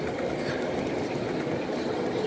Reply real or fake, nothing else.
real